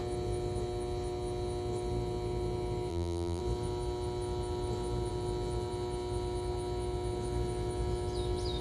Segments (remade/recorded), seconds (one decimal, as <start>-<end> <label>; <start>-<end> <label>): 0.0-2.9 recorded; 2.9-3.4 remade; 3.4-8.6 recorded